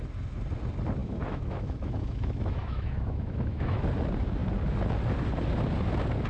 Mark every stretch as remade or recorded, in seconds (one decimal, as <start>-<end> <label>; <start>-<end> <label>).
0.0-1.0 recorded; 1.0-3.8 remade; 3.8-6.3 recorded